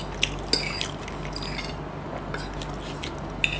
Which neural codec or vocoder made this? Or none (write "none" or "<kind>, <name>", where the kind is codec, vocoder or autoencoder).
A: none